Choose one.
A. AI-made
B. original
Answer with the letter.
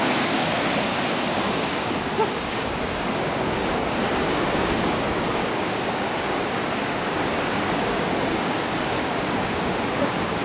A